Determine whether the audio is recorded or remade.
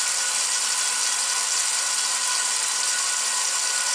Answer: recorded